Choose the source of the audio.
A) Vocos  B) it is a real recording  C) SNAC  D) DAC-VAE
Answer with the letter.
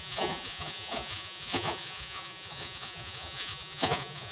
A